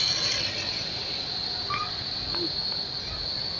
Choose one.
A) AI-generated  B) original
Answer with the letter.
B